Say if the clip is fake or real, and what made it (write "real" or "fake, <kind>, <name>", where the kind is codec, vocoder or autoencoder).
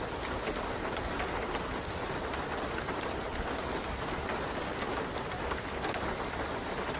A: real